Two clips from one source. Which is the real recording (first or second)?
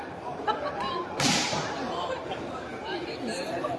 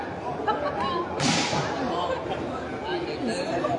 second